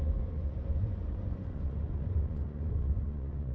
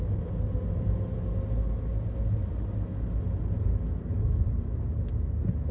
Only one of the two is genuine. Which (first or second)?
second